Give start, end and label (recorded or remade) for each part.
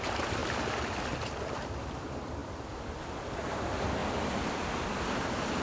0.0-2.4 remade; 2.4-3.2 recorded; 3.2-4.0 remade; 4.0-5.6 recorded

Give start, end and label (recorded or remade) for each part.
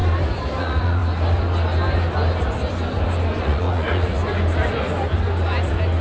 0.0-0.6 recorded; 0.6-1.0 remade; 1.0-3.4 recorded; 3.4-4.2 remade; 4.2-6.0 recorded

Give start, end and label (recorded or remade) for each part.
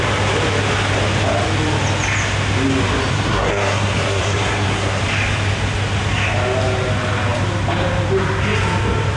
0.0-3.1 recorded; 3.1-5.0 remade; 5.0-9.2 recorded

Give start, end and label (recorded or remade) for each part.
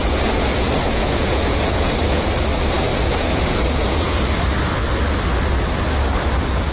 0.0-2.3 remade; 2.3-2.9 recorded; 2.9-4.2 remade; 4.2-6.7 recorded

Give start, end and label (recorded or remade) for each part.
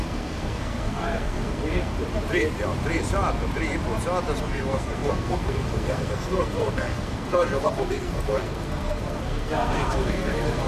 0.0-1.9 remade; 1.9-4.4 recorded; 4.4-10.7 remade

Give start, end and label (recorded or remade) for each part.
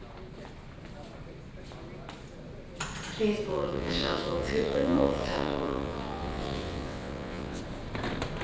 0.0-3.5 recorded; 3.5-7.6 remade; 7.6-8.4 recorded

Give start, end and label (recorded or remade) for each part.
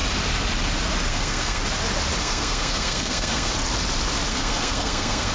0.0-1.1 recorded; 1.1-1.6 remade; 1.6-2.2 recorded; 2.2-3.5 remade; 3.5-4.3 recorded; 4.3-5.3 remade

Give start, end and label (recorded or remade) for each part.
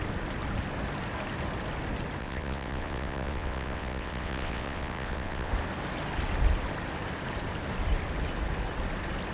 0.0-2.2 recorded; 2.2-5.5 remade; 5.5-9.3 recorded